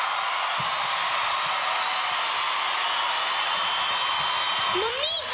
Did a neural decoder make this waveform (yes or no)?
no